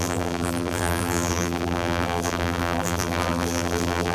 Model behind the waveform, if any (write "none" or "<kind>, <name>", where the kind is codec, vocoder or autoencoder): vocoder, BigVGAN v2